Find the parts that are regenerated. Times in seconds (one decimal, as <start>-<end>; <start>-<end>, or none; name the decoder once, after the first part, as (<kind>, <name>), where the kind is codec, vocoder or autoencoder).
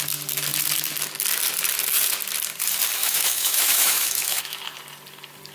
3.0-4.6 (autoencoder, DAC-VAE)